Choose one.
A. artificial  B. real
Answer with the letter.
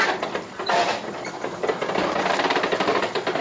B